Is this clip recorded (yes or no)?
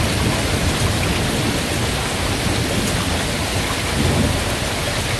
yes